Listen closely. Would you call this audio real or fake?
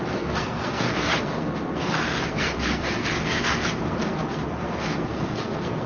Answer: fake